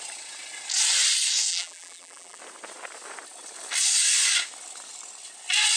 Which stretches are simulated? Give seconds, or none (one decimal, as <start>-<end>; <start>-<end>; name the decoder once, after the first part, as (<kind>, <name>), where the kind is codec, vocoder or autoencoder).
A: 1.5-2.4 (vocoder, BigVGAN v2)